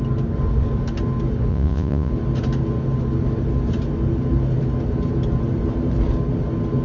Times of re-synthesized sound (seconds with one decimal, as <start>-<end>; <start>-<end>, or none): 1.5-2.1